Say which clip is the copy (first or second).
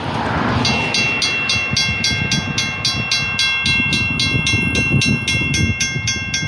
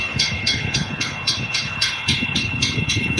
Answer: second